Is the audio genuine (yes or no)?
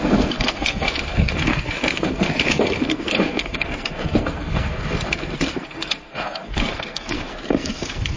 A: no